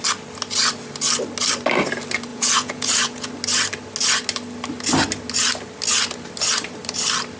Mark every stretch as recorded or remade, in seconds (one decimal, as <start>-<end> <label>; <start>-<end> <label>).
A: 0.0-2.3 recorded; 2.3-3.3 remade; 3.3-7.4 recorded